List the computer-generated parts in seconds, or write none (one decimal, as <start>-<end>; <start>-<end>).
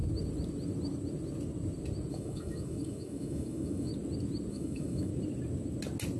2.1-3.9; 4.5-5.1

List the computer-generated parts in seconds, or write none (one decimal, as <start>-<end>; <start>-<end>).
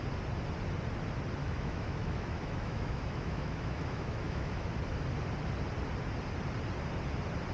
1.4-4.8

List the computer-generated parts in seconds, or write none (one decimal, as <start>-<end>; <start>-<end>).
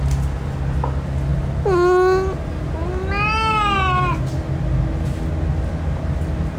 none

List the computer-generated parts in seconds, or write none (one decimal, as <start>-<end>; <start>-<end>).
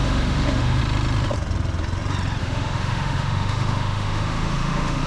0.0-0.8; 2.4-5.1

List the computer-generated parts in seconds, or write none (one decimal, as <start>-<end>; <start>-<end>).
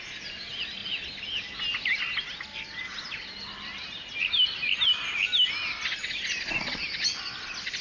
none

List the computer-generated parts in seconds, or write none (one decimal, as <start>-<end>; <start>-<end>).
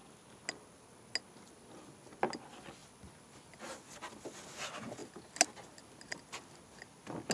none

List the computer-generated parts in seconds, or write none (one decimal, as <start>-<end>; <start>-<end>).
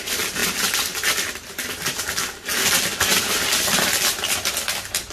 none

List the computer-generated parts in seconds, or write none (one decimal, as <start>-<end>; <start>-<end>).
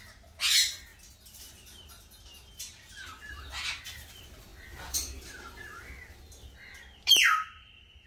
none